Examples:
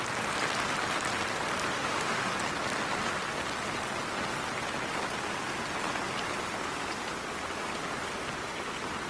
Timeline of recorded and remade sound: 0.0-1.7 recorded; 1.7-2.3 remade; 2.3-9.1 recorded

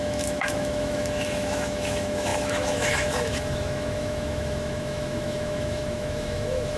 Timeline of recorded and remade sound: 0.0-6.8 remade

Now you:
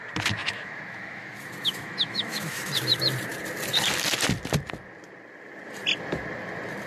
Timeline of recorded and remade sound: 0.0-0.4 recorded; 0.4-2.7 remade; 2.7-6.9 recorded

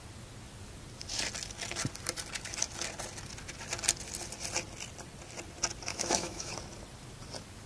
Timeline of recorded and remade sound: 0.0-5.9 recorded; 5.9-6.5 remade; 6.5-7.7 recorded

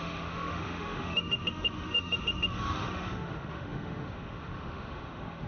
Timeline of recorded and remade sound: 0.0-5.5 remade